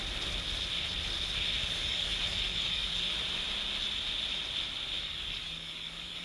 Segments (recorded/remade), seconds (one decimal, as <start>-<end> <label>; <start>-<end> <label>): 0.0-1.8 recorded; 1.8-2.9 remade; 2.9-5.0 recorded; 5.0-6.2 remade